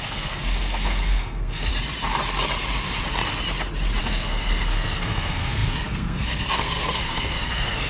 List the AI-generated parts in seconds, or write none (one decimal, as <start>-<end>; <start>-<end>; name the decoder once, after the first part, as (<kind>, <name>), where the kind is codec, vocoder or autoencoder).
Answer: 0.0-1.7 (codec, SNAC); 4.0-7.9